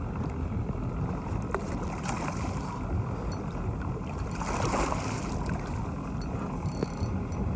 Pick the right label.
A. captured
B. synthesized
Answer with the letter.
A